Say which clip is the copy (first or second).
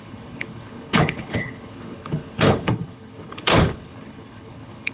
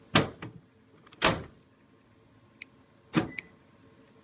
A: first